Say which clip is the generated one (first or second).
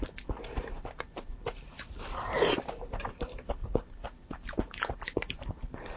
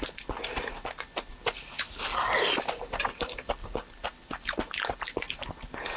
first